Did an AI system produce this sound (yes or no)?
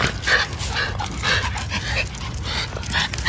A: no